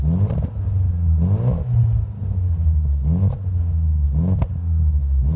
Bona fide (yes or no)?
yes